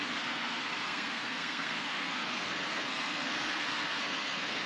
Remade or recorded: remade